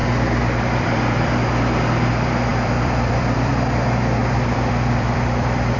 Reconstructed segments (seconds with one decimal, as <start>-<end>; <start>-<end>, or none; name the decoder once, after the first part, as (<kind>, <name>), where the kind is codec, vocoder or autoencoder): 0.0-2.1 (vocoder, BigVGAN v2); 2.5-3.5; 4.2-5.8